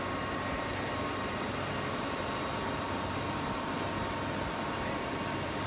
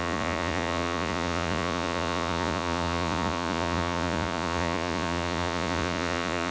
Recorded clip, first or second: first